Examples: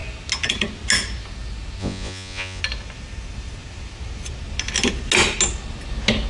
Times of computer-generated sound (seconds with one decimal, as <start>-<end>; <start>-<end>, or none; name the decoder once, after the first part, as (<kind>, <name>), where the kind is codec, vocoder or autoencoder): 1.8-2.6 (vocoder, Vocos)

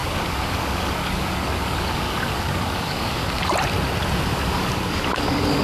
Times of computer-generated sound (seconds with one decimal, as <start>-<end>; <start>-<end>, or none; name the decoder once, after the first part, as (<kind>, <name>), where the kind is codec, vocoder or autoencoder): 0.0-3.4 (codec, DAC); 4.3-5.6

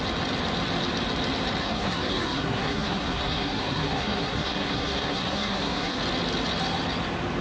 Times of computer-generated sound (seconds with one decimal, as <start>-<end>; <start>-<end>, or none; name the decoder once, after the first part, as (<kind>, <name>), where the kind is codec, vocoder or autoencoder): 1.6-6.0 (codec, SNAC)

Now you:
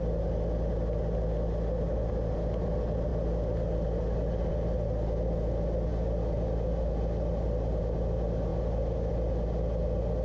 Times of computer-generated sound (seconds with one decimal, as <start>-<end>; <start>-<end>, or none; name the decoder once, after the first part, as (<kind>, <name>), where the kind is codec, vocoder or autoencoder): none

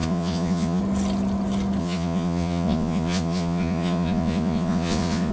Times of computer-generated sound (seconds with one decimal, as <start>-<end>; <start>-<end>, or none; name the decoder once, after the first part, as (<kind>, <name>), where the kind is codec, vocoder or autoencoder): 0.0-0.8 (vocoder, Vocos); 1.8-5.3

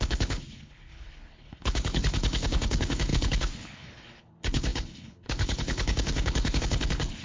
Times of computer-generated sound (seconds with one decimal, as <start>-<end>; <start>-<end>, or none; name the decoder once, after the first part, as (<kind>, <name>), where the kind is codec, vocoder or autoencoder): 0.0-7.2 (codec, HILCodec)

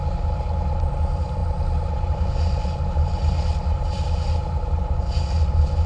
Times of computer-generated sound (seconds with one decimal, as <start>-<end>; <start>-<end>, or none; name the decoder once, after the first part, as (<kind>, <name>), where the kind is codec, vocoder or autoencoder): none